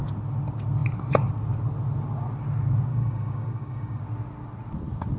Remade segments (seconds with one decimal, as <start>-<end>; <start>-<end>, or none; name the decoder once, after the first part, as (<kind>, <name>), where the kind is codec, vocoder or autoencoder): 2.9-4.0 (codec, DAC)